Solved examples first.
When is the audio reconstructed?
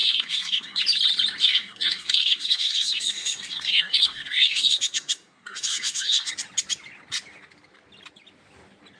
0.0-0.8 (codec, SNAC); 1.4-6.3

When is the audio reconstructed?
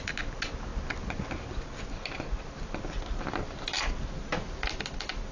none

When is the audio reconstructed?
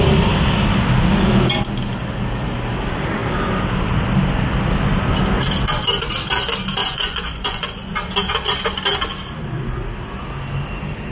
6.8-7.9 (vocoder, Vocos)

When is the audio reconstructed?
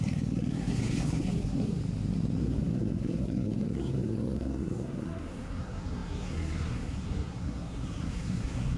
0.0-1.8 (codec, SNAC); 2.4-8.8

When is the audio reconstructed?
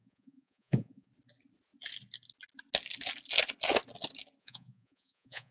0.0-1.1 (vocoder, Vocos); 4.4-5.5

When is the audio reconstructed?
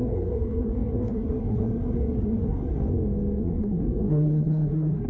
0.0-2.8 (codec, SNAC); 3.4-5.1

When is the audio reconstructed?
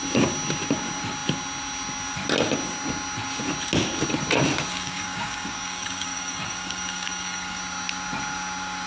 4.7-7.6 (codec, DAC)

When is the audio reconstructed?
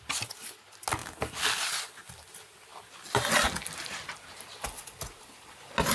2.7-3.7 (vocoder, BigVGAN v2)